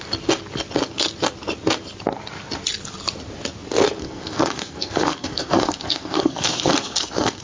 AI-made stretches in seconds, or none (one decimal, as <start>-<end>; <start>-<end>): 4.0-7.4